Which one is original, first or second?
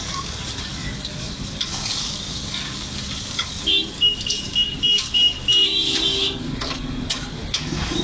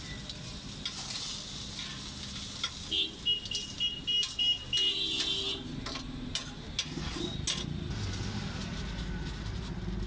second